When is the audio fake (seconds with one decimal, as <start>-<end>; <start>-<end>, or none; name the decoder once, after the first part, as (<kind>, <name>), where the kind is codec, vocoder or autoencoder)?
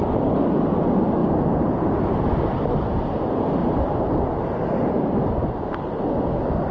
1.2-2.7 (vocoder, BigVGAN v2); 3.6-5.1